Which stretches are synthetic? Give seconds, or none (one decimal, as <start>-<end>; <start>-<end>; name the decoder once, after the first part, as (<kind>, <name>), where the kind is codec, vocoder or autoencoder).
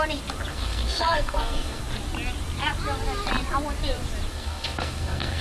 0.5-1.8 (codec, SNAC); 4.3-5.4